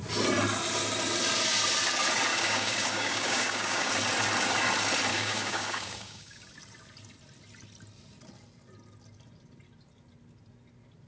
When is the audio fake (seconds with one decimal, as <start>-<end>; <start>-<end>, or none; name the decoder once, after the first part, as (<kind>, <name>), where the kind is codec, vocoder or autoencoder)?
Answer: 2.3-3.9 (codec, DAC); 5.1-6.5